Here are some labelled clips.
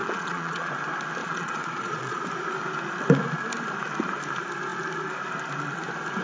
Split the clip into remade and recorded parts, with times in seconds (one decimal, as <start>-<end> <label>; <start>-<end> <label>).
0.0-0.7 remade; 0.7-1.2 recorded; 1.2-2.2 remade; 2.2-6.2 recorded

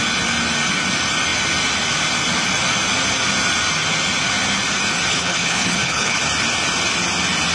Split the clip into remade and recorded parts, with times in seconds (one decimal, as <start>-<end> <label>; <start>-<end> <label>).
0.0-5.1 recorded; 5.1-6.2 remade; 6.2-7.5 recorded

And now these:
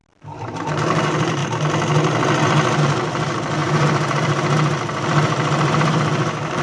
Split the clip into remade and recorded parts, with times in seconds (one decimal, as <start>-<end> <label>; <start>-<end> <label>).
0.0-0.5 recorded; 0.5-1.4 remade; 1.4-2.8 recorded; 2.8-6.6 remade

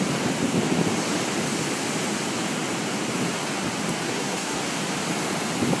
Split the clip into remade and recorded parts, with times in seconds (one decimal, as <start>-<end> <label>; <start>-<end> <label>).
0.0-4.0 recorded; 4.0-4.6 remade; 4.6-5.8 recorded

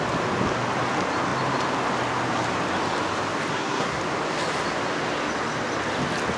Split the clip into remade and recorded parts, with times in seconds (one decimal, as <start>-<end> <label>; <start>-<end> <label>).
0.0-3.5 recorded; 3.5-4.0 remade; 4.0-6.4 recorded